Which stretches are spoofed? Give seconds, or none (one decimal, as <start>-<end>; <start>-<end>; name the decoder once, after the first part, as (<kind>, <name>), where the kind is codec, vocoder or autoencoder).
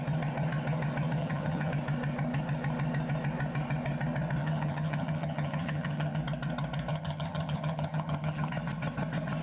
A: 1.2-1.7 (vocoder, HiFi-GAN); 4.4-6.2; 6.9-8.5